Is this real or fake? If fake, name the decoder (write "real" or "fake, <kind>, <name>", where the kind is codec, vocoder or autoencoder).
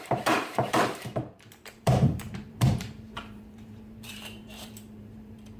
fake, vocoder, BigVGAN v2